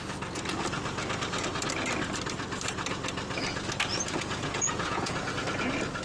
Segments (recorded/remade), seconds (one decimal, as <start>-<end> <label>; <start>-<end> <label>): 0.0-3.9 recorded; 3.9-5.3 remade; 5.3-6.0 recorded